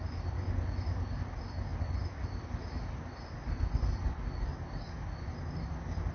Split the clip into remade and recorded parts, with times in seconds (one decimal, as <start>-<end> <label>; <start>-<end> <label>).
0.0-6.1 recorded